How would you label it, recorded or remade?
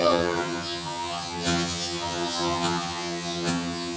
remade